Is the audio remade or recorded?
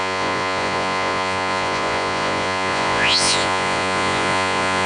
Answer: remade